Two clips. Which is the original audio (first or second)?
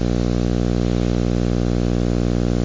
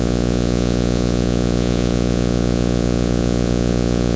first